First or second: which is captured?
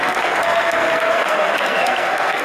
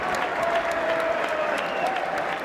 second